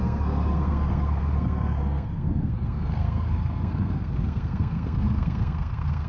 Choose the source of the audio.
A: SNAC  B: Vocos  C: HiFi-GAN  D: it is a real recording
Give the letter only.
A